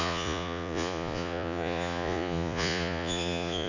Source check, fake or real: fake